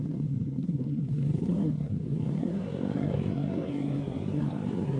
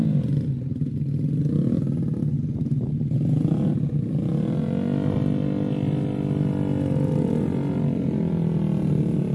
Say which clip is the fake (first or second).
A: first